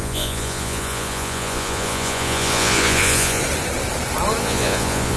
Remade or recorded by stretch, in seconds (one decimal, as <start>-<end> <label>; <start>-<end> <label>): 0.0-3.4 remade; 3.4-4.4 recorded; 4.4-5.2 remade